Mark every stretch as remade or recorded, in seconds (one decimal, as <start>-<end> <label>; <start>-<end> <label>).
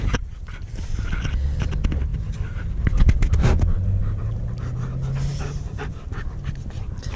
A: 0.0-7.2 recorded